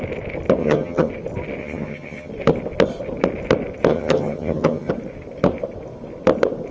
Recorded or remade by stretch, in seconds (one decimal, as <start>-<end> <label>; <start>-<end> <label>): 0.0-0.6 recorded; 0.6-1.1 remade; 1.1-1.6 recorded; 1.6-2.3 remade; 2.3-3.9 recorded; 3.9-4.9 remade; 4.9-6.7 recorded